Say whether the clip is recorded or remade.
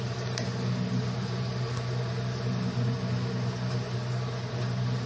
recorded